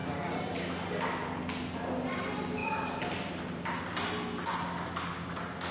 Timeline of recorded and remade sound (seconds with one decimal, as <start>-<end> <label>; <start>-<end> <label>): 0.0-2.6 recorded; 2.6-3.8 remade; 3.8-5.7 recorded